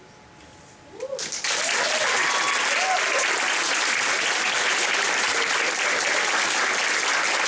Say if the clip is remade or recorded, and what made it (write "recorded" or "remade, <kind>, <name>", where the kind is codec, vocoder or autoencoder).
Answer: recorded